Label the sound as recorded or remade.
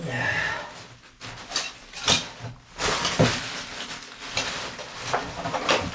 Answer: recorded